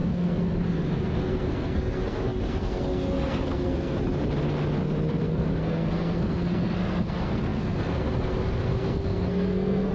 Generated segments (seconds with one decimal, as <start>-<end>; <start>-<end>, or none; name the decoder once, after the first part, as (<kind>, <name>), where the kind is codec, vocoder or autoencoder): 0.0-4.0 (codec, SNAC); 5.1-9.9